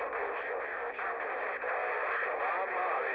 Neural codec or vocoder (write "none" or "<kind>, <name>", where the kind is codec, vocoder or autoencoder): none